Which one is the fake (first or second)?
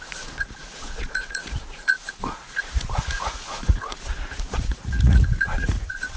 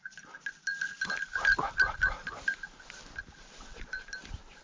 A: first